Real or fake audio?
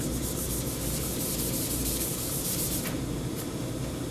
fake